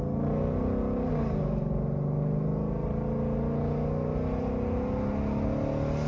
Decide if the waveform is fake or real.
real